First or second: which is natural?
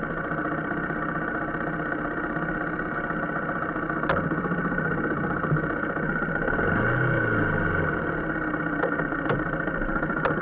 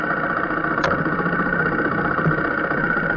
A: first